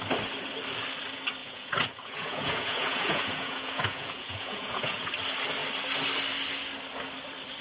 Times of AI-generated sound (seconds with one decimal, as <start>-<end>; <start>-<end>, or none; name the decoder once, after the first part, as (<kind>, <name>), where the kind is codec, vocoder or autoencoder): 1.4-5.1 (vocoder, Vocos)